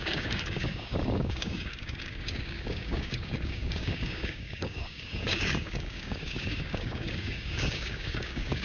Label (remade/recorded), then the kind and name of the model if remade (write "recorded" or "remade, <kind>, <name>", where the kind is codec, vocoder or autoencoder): remade, codec, DAC